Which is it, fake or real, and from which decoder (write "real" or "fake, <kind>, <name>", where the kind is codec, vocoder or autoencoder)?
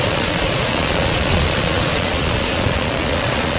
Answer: fake, vocoder, Vocos